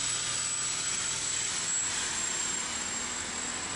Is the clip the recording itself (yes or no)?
yes